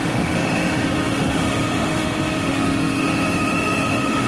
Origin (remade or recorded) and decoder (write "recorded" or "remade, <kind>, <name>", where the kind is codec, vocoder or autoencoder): remade, autoencoder, DAC-VAE